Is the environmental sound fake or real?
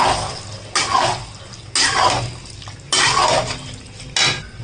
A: real